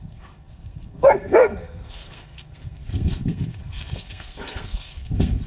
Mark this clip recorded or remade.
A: remade